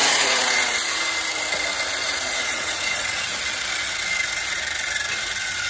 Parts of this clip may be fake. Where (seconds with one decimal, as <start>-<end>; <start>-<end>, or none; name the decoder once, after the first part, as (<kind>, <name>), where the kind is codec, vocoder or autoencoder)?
0.0-1.0 (vocoder, Vocos); 2.0-3.4